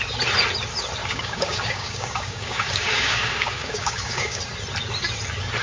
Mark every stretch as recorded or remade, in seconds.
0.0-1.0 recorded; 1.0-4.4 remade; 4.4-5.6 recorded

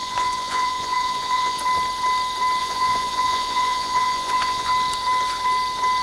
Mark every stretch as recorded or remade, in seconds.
0.0-1.6 remade; 1.6-2.6 recorded; 2.6-4.7 remade; 4.7-6.0 recorded

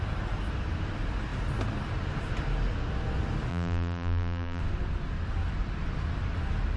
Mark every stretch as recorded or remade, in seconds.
0.0-3.5 recorded; 3.5-4.6 remade; 4.6-6.8 recorded